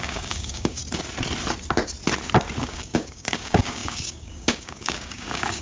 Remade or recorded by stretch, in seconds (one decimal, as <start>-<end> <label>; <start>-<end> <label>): 0.0-0.8 remade; 0.8-2.6 recorded; 2.6-5.6 remade